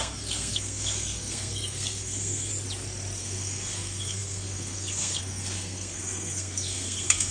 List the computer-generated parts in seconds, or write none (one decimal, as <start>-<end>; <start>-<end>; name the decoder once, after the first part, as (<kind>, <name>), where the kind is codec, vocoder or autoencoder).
0.0-2.5 (codec, SNAC); 3.2-7.3